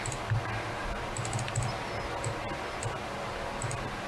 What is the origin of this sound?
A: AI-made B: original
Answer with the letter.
B